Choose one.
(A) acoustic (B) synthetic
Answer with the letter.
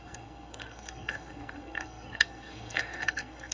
B